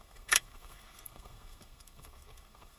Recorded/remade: remade